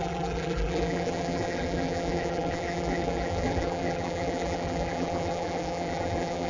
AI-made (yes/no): yes